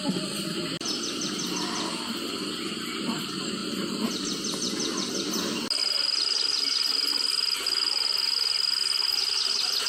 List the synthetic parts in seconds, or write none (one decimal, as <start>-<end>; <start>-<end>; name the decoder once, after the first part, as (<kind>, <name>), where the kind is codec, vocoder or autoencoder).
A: 3.6-4.2 (vocoder, BigVGAN v2); 5.8-7.1